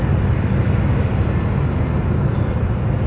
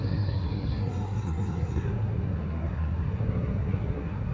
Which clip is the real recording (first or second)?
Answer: first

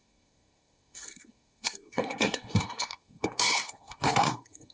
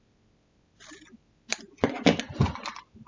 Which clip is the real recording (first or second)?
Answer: second